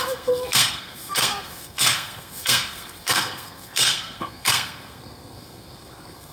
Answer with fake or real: fake